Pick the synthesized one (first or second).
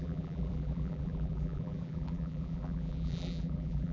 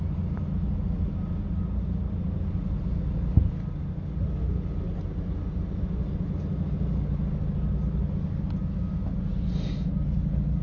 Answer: first